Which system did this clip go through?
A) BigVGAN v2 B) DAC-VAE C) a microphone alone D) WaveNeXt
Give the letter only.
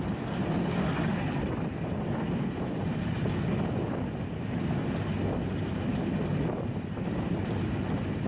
C